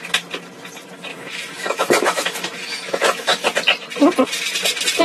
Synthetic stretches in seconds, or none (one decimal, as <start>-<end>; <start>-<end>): 1.1-3.4